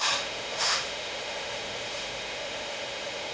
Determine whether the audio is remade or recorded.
remade